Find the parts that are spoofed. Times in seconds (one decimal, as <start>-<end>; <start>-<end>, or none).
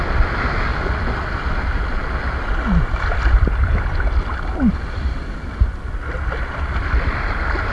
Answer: none